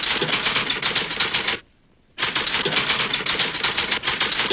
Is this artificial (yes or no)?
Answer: no